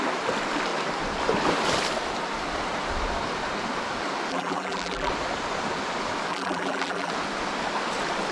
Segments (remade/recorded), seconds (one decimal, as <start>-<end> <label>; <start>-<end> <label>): 0.0-4.3 recorded; 4.3-5.1 remade; 5.1-6.3 recorded; 6.3-7.1 remade; 7.1-8.3 recorded